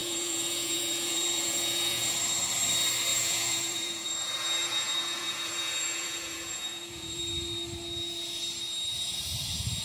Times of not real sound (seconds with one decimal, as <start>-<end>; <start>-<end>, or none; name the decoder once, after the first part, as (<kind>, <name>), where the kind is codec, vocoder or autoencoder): 0.0-2.1 (vocoder, Vocos); 3.1-7.2